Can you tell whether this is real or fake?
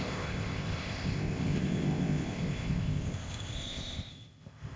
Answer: fake